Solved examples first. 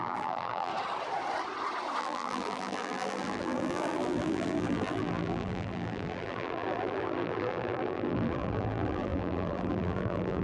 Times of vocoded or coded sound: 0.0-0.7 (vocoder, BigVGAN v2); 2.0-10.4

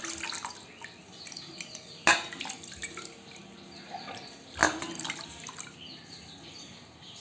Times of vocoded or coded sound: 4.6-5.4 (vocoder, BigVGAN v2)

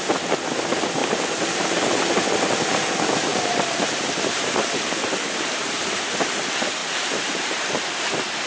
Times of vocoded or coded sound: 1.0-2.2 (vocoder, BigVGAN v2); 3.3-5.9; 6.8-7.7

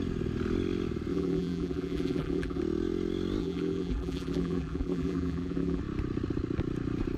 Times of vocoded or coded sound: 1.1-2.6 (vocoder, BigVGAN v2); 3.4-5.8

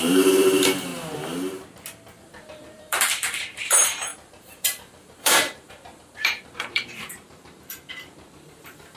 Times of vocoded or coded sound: 0.0-0.9 (vocoder, BigVGAN v2); 2.2-9.0

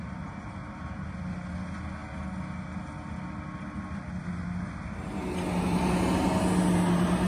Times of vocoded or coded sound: none

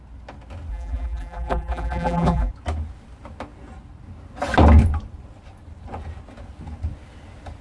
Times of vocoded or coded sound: 0.7-2.5 (vocoder, BigVGAN v2)

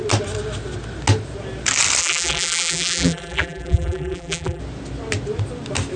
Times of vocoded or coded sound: 2.0-4.6 (vocoder, BigVGAN v2)